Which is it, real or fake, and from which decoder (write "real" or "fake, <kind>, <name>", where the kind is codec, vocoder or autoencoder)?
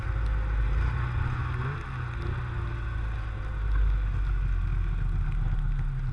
real